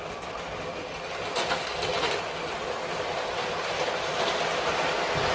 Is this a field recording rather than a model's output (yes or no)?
yes